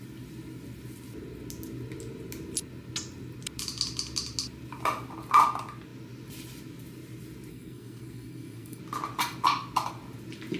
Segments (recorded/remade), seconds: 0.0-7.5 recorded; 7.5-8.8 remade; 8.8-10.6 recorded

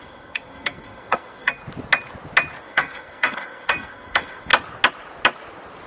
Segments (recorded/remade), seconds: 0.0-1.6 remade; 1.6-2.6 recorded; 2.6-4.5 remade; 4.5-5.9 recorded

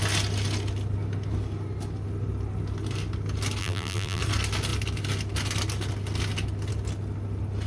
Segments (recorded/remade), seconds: 0.0-3.6 recorded; 3.6-4.2 remade; 4.2-7.7 recorded

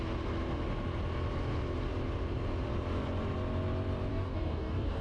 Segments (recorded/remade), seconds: 0.0-4.1 recorded; 4.1-5.0 remade

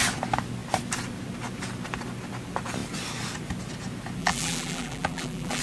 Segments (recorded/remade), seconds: 0.0-4.2 recorded; 4.2-5.6 remade

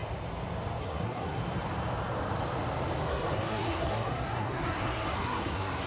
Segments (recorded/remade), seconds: 0.0-0.8 recorded; 0.8-1.4 remade; 1.4-3.0 recorded; 3.0-5.9 remade

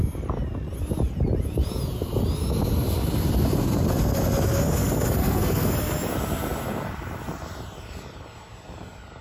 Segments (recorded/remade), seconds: 0.0-5.2 recorded; 5.2-5.7 remade; 5.7-9.2 recorded